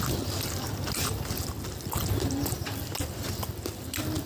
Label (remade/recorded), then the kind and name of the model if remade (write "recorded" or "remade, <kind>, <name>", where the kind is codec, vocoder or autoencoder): recorded